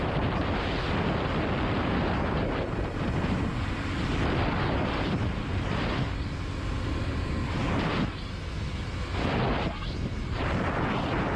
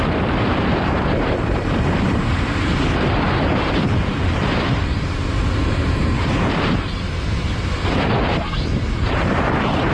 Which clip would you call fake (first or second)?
second